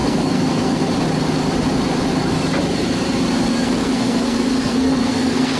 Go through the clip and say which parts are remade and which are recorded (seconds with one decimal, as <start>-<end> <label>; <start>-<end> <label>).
0.0-0.9 remade; 0.9-3.5 recorded; 3.5-5.6 remade